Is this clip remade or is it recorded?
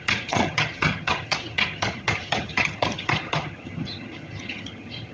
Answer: remade